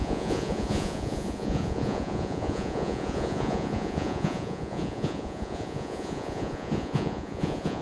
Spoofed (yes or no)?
yes